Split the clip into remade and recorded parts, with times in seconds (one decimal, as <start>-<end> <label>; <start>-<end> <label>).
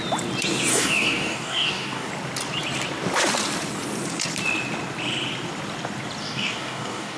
0.0-0.7 recorded; 0.7-2.1 remade; 2.1-6.2 recorded; 6.2-7.2 remade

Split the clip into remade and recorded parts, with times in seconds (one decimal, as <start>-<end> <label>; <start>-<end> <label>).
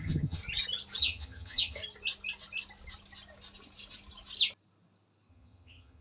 0.0-0.4 remade; 0.4-1.0 recorded; 1.0-1.8 remade; 1.8-5.3 recorded; 5.3-6.0 remade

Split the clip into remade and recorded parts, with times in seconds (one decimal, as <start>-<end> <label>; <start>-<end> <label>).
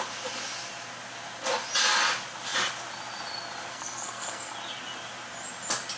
0.0-3.7 recorded; 3.7-4.5 remade; 4.5-6.0 recorded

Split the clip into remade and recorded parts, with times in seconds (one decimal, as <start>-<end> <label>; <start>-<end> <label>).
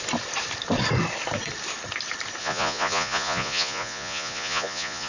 0.0-2.4 recorded; 2.4-5.1 remade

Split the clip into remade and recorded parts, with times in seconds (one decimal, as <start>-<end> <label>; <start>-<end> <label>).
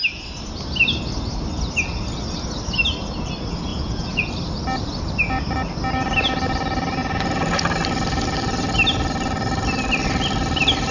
0.0-3.7 recorded; 3.7-4.3 remade; 4.3-7.0 recorded; 7.0-7.6 remade; 7.6-10.9 recorded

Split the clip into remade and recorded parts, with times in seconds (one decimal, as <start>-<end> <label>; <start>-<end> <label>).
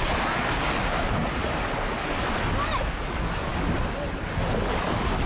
0.0-5.3 recorded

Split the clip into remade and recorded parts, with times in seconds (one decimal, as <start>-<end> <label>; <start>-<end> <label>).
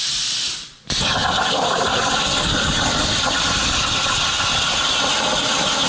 0.0-5.9 recorded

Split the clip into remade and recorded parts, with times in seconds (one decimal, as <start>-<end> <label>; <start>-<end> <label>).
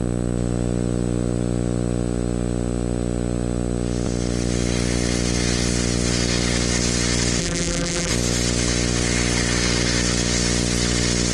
0.0-7.4 recorded; 7.4-8.1 remade; 8.1-11.3 recorded